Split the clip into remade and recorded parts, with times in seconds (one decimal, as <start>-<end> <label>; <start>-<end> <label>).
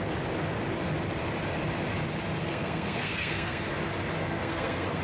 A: 0.0-2.4 recorded; 2.4-3.7 remade; 3.7-4.2 recorded; 4.2-5.0 remade